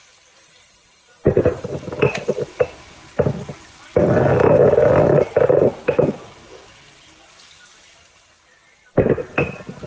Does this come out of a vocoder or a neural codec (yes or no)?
no